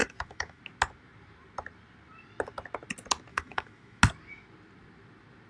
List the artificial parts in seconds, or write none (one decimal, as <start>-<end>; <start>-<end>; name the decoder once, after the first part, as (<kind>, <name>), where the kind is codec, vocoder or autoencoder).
0.0-0.6 (autoencoder, DAC-VAE); 3.3-4.0